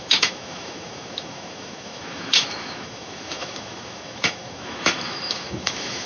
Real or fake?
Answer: fake